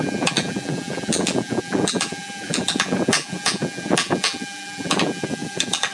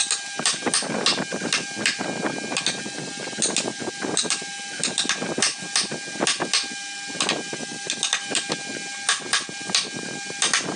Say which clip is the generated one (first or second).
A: first